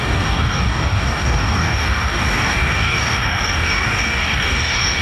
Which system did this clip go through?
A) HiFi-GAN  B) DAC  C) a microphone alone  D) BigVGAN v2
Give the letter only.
B